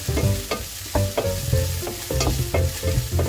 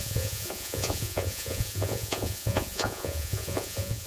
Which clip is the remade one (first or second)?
second